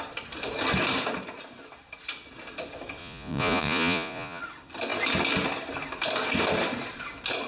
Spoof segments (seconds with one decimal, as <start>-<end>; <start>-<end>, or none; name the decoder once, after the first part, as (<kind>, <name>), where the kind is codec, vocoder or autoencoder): 3.0-4.4 (vocoder, Vocos)